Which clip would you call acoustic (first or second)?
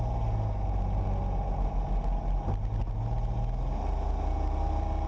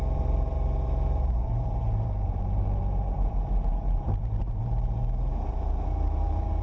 first